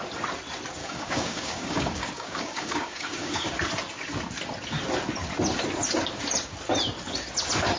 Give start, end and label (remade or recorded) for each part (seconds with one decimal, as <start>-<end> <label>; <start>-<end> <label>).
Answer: 0.0-0.8 recorded; 0.8-3.5 remade; 3.5-7.8 recorded